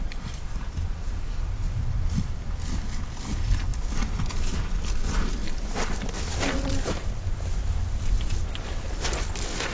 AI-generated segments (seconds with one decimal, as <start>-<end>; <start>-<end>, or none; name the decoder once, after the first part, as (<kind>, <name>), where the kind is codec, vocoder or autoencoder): none

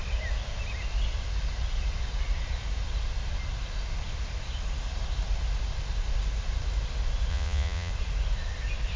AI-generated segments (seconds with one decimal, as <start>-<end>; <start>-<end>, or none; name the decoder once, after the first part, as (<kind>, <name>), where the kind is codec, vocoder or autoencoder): 7.3-7.9 (vocoder, Vocos)

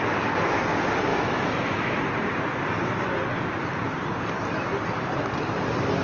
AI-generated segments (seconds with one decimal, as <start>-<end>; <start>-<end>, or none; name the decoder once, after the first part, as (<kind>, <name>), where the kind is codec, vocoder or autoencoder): 1.1-2.0 (autoencoder, DAC-VAE)

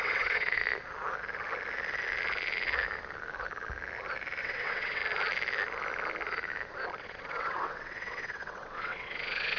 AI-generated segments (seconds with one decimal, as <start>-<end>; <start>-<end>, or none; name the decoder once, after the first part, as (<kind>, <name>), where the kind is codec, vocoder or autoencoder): 0.0-0.6 (vocoder, WaveNeXt); 4.4-5.0; 7.0-9.6